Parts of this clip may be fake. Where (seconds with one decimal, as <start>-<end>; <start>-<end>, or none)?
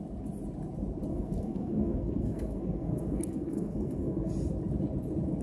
1.1-4.3